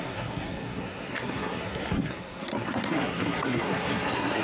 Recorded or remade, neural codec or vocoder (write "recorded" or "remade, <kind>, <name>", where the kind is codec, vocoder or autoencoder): remade, codec, SNAC